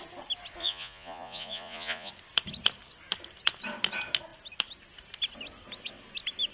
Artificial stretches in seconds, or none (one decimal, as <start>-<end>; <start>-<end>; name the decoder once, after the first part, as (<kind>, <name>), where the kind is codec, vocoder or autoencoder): 0.6-2.1 (vocoder, Vocos)